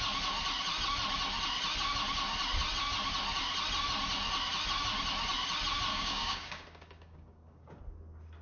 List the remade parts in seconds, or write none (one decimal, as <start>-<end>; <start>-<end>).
5.9-7.8